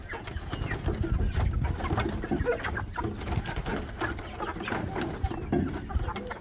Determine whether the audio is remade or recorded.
recorded